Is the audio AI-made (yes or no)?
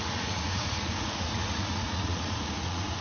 yes